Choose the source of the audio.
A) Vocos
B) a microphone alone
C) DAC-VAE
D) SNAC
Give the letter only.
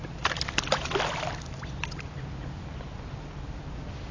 B